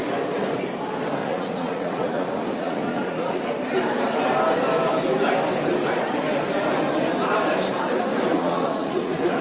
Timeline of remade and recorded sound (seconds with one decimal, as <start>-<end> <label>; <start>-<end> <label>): 0.0-1.2 recorded; 1.2-3.4 remade; 3.4-8.3 recorded; 8.3-9.4 remade